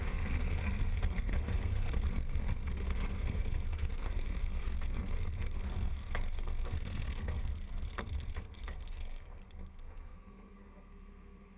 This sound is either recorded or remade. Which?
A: remade